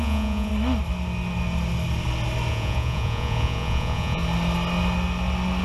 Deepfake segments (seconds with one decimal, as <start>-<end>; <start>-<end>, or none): 0.0-0.5; 2.5-4.2